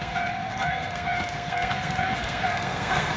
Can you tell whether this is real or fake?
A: fake